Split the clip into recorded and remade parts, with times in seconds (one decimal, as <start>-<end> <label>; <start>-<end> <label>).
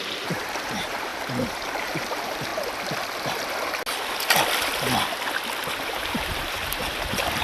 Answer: 0.0-2.5 remade; 2.5-5.9 recorded; 5.9-7.4 remade